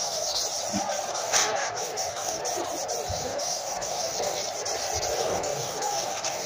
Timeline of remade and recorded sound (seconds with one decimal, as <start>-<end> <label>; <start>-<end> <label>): 0.0-0.4 remade; 0.4-1.1 recorded; 1.1-2.4 remade; 2.4-3.2 recorded; 3.2-4.4 remade; 4.4-5.2 recorded; 5.2-6.5 remade